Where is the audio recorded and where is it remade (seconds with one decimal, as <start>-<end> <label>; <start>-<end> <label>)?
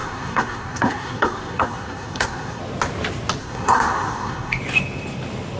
0.0-2.6 remade; 2.6-3.4 recorded; 3.4-4.6 remade; 4.6-5.6 recorded